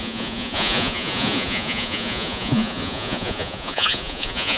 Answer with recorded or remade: remade